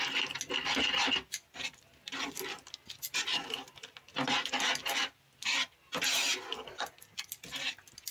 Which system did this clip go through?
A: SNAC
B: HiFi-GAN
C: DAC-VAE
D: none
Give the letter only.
D